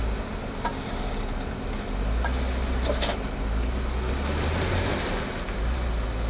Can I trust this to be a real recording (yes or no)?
yes